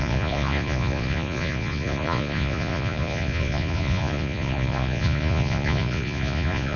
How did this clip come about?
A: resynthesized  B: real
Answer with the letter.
A